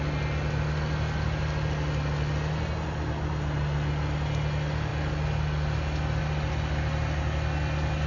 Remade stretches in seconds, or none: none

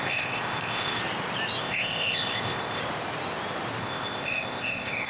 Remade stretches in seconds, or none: 0.0-1.0 (codec, ZipCodec); 1.6-2.8; 3.8-5.1